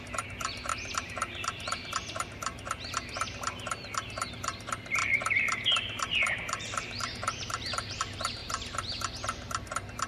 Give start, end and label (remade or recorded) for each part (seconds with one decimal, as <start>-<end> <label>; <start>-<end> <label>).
0.0-0.7 recorded; 0.7-1.9 remade; 1.9-5.0 recorded; 5.0-8.0 remade; 8.0-10.1 recorded